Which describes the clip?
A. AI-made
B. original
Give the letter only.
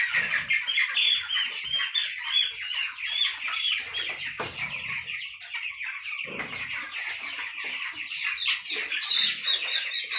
B